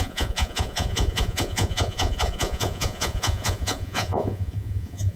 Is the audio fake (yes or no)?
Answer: yes